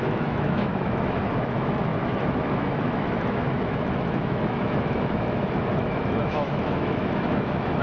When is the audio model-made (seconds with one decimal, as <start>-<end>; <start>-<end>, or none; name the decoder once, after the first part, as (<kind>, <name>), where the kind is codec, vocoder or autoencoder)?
0.0-7.8 (autoencoder, DAC-VAE)